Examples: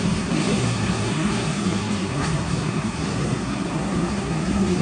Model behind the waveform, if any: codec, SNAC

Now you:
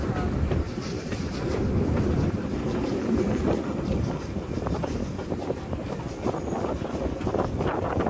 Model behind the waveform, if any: none